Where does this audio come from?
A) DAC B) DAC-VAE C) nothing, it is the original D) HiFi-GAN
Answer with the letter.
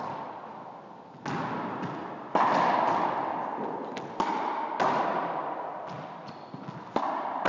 C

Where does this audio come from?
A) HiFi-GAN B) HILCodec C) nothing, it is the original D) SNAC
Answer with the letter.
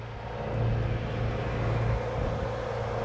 C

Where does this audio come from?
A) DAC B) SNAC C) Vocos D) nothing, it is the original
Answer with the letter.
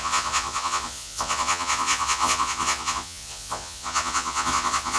C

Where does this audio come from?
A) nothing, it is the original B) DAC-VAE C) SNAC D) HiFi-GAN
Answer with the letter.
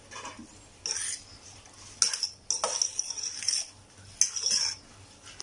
A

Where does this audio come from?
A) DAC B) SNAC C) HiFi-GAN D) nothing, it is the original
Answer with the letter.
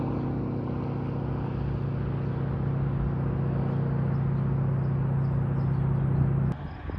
D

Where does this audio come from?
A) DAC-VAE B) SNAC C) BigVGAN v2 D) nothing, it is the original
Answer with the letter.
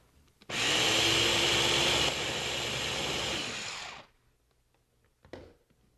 D